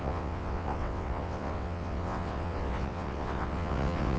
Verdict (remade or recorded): remade